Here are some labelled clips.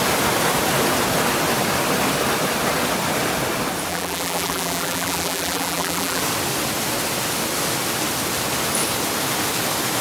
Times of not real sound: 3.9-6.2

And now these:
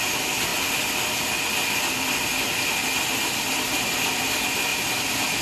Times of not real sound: none